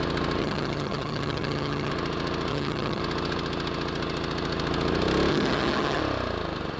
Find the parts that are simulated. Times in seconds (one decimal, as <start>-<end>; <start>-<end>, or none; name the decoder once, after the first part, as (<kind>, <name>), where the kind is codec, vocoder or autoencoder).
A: 0.4-1.9 (vocoder, HiFi-GAN); 2.5-3.0; 5.3-6.0